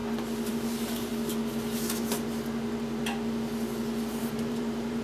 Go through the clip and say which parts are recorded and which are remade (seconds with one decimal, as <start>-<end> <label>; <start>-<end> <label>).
0.0-0.5 recorded; 0.5-1.1 remade; 1.1-4.1 recorded; 4.1-5.0 remade

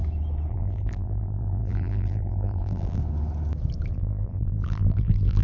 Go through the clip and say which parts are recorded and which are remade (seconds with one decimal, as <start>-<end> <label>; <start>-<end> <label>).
0.0-0.5 recorded; 0.5-3.0 remade; 3.0-3.9 recorded; 3.9-5.4 remade